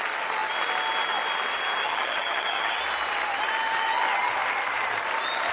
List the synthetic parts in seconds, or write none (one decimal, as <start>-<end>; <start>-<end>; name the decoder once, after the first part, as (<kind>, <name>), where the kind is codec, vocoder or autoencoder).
1.8-2.8 (vocoder, HiFi-GAN)